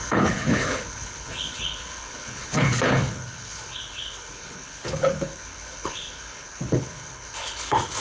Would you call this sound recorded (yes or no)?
no